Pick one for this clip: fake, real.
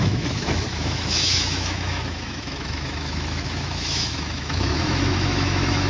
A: fake